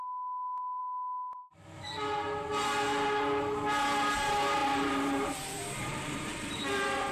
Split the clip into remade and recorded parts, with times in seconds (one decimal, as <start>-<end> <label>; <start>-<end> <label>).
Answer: 0.0-4.6 recorded; 4.6-7.1 remade

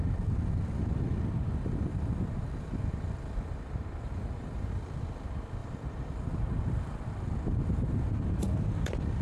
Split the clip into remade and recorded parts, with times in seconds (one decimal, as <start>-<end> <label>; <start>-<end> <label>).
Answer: 0.0-1.9 recorded; 1.9-4.7 remade; 4.7-5.6 recorded; 5.6-8.1 remade; 8.1-9.2 recorded